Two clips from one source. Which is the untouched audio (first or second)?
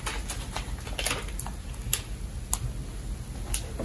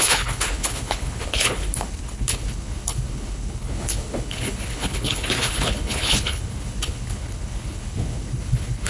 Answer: first